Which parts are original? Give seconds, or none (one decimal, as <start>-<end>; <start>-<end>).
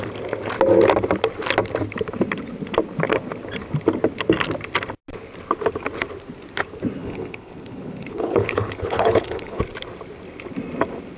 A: 0.0-7.0; 9.6-11.2